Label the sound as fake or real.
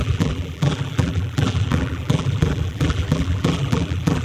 fake